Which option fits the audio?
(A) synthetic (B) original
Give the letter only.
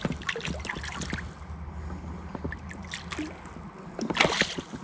B